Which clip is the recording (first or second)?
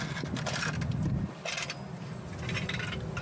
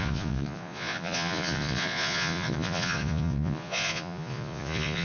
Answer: first